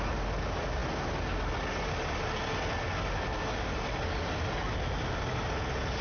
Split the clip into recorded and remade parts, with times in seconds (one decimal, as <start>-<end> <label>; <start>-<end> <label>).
0.0-6.0 recorded